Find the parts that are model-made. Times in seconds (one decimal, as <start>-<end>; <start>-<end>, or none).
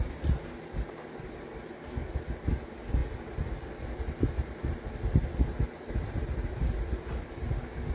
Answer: none